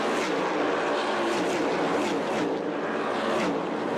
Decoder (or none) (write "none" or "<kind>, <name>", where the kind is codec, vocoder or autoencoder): none